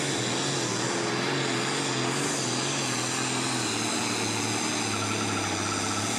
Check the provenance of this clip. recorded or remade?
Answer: recorded